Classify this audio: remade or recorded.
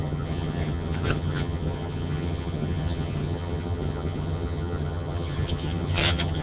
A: remade